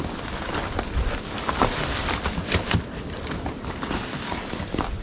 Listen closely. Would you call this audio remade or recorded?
remade